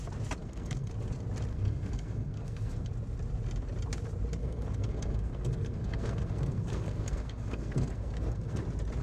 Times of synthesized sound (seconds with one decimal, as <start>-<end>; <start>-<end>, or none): 0.4-0.9; 1.5-2.9; 4.4-8.6